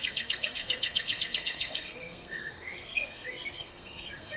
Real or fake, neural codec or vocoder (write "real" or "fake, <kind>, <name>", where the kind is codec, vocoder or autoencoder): fake, codec, SNAC